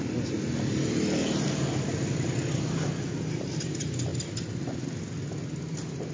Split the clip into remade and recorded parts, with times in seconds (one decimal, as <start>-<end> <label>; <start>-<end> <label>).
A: 0.0-6.1 recorded